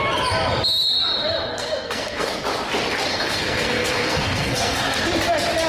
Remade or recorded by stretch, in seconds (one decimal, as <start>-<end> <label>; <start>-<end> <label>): 0.0-1.5 recorded; 1.5-2.3 remade; 2.3-3.1 recorded; 3.1-5.0 remade; 5.0-5.7 recorded